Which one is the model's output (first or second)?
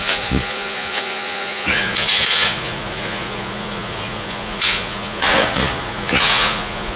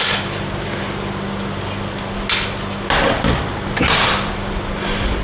first